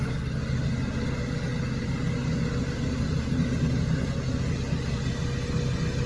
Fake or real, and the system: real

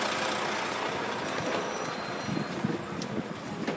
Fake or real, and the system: real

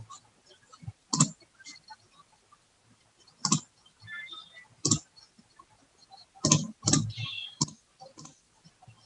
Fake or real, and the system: real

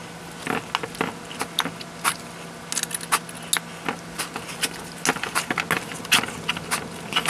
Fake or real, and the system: real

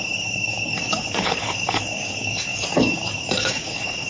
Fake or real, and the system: fake, codec, DAC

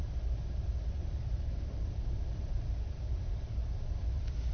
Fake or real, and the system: fake, vocoder, BigVGAN v2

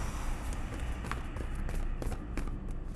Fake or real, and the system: real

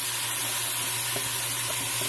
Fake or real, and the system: real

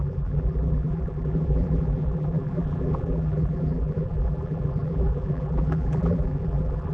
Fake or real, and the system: fake, vocoder, BigVGAN v2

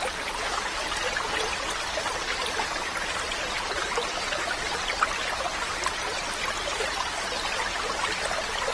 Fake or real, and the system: real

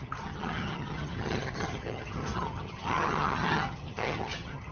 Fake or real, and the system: fake, vocoder, HiFi-GAN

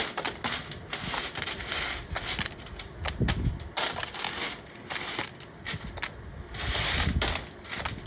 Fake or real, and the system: real